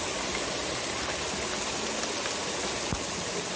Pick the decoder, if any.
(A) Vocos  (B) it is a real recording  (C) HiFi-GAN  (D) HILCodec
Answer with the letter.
B